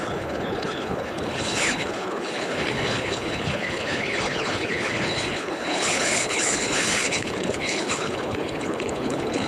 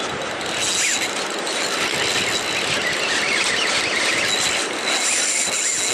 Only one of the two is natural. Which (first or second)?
second